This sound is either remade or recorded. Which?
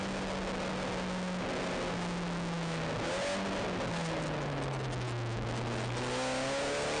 recorded